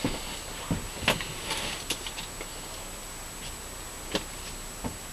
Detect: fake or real real